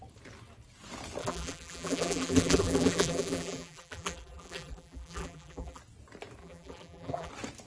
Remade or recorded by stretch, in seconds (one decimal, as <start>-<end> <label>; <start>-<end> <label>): 0.0-1.2 recorded; 1.2-5.8 remade; 5.8-6.4 recorded; 6.4-7.3 remade; 7.3-7.7 recorded